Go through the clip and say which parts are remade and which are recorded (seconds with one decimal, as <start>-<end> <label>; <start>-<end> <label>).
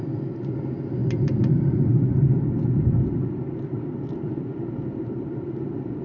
0.0-6.0 recorded